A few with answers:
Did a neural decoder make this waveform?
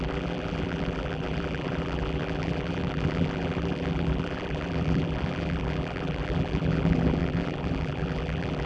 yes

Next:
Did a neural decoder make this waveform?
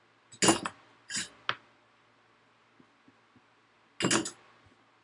no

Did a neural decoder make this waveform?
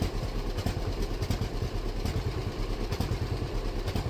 yes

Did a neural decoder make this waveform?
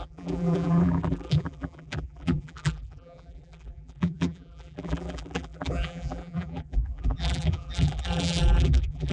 yes